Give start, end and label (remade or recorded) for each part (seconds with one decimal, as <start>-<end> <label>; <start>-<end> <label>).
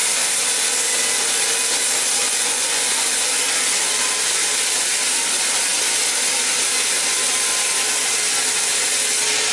0.0-2.2 recorded; 2.2-3.3 remade; 3.3-9.5 recorded